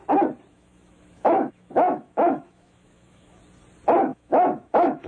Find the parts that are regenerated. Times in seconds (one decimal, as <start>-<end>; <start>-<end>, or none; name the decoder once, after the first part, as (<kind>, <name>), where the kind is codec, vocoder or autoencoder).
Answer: 0.5-3.4 (autoencoder, DAC-VAE); 4.1-5.1